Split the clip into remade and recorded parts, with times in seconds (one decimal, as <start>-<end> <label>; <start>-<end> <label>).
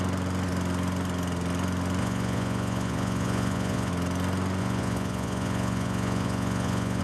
0.0-2.0 recorded; 2.0-3.9 remade; 3.9-4.6 recorded; 4.6-7.0 remade